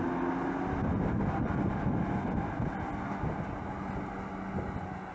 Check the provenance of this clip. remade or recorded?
recorded